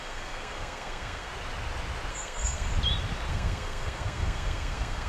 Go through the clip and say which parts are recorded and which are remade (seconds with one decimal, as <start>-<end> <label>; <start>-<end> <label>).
0.0-1.3 remade; 1.3-2.1 recorded; 2.1-2.7 remade; 2.7-3.3 recorded; 3.3-5.1 remade